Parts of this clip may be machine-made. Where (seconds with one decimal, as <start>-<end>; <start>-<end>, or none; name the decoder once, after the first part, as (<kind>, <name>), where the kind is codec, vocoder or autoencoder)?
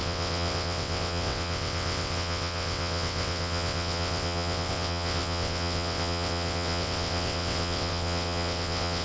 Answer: 0.0-9.0 (vocoder, WaveNeXt)